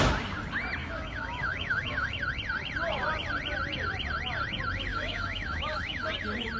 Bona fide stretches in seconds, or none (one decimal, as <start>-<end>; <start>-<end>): 0.0-0.8; 2.2-4.9; 6.1-6.6